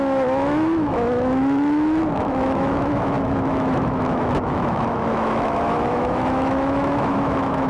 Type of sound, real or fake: fake